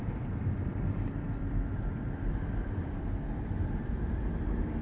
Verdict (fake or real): fake